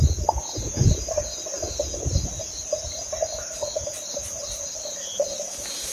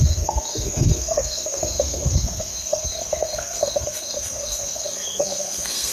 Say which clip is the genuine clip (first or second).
first